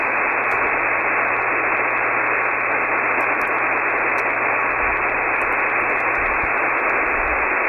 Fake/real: real